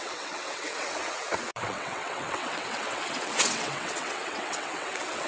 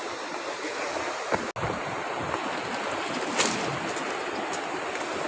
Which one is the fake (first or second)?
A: first